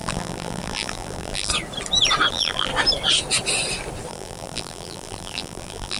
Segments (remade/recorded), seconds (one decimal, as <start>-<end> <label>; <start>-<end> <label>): 0.0-1.5 remade; 1.5-2.3 recorded; 2.3-2.7 remade; 2.7-4.1 recorded; 4.1-6.0 remade